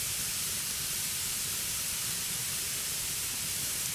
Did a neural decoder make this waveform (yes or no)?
yes